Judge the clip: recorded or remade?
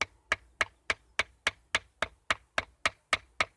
recorded